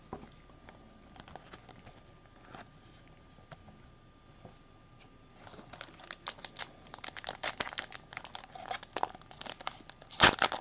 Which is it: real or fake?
real